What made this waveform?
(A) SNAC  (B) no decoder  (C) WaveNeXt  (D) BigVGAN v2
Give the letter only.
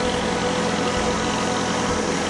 B